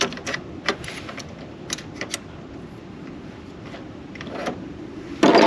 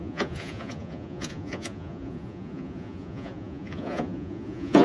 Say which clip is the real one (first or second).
first